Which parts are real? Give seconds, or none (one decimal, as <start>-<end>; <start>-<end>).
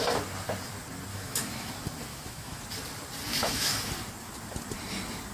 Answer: 0.0-1.1; 1.7-2.1; 2.6-3.3; 3.9-5.3